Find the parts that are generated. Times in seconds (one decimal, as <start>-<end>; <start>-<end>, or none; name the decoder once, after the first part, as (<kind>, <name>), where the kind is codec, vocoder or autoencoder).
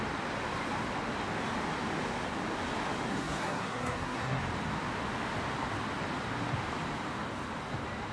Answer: 3.1-4.4 (codec, SNAC)